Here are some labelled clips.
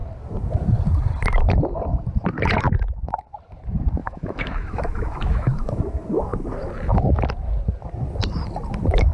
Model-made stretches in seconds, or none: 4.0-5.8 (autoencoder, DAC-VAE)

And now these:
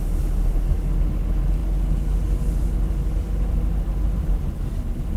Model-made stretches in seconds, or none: none

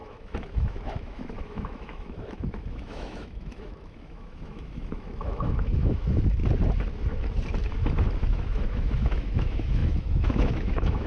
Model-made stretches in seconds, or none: 0.0-6.4 (autoencoder, DAC-VAE); 8.2-11.1

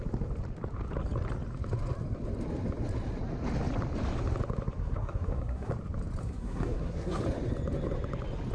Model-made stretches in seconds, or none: 4.8-5.7 (codec, SNAC); 6.2-7.2